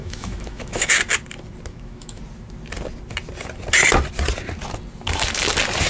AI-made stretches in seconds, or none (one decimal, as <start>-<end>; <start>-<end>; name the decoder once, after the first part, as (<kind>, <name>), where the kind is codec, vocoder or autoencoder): 0.0-0.9 (autoencoder, DAC-VAE); 1.7-2.2